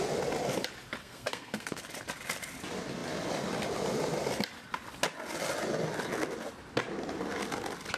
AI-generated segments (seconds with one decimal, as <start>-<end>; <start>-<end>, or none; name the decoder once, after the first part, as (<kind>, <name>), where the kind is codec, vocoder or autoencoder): 1.0-1.8 (codec, SNAC)